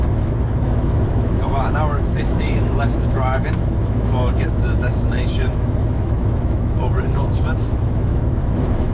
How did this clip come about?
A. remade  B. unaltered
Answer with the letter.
A